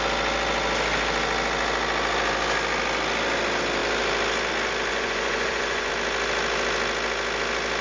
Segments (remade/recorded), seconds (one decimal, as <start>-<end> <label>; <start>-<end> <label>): 0.0-4.9 recorded; 4.9-5.9 remade; 5.9-7.8 recorded